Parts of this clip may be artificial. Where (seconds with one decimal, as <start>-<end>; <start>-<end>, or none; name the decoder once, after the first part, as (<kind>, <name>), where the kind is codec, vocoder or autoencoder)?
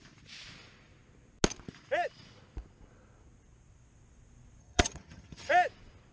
4.6-5.5 (vocoder, HiFi-GAN)